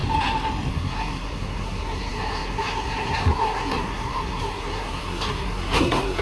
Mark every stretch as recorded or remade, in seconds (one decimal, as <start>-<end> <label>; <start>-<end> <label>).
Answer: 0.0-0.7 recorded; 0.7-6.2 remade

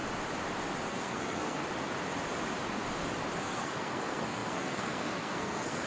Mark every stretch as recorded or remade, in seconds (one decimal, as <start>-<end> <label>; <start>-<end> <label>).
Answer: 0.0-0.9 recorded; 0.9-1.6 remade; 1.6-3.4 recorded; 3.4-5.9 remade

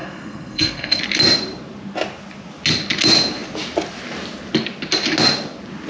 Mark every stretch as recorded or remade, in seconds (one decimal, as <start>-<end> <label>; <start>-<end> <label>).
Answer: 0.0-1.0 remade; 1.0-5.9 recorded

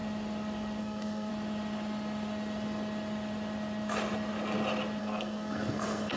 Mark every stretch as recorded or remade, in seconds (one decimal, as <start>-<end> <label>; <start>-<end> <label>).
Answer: 0.0-0.8 recorded; 0.8-1.3 remade; 1.3-5.0 recorded; 5.0-6.2 remade